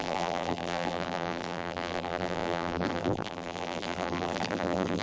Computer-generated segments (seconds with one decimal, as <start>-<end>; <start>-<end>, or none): 0.0-5.0